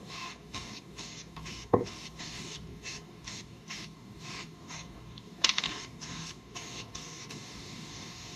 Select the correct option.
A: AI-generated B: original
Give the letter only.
A